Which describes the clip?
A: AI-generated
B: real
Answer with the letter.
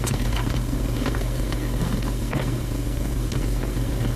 A